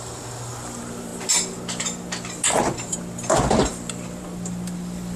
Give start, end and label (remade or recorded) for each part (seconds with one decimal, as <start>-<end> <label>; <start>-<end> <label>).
0.0-1.1 remade; 1.1-4.2 recorded; 4.2-5.2 remade